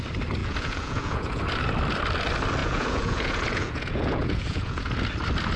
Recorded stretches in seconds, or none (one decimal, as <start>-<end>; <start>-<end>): 0.0-0.4; 1.4-2.6; 4.9-5.6